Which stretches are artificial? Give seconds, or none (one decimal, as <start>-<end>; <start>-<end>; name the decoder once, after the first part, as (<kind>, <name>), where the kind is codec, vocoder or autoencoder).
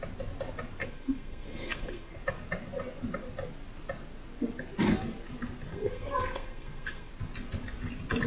0.8-2.1 (codec, SNAC); 5.7-7.1